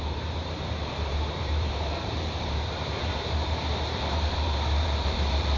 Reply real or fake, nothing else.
fake